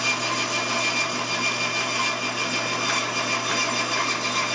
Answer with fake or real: real